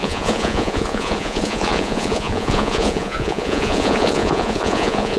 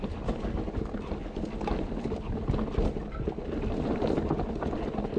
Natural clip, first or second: second